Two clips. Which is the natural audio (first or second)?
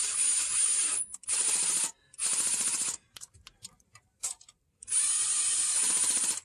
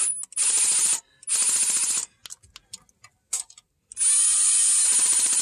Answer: second